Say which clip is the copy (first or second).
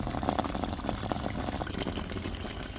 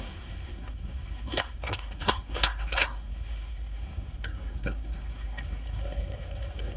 second